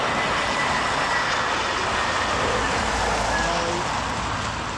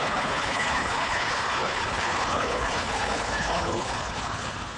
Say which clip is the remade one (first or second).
second